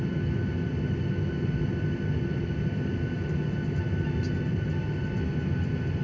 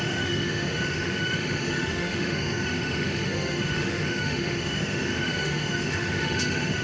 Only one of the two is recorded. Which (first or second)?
first